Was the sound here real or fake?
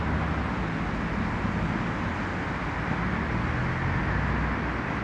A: real